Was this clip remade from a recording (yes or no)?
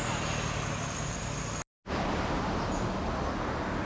no